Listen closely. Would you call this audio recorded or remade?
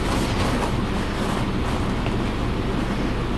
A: recorded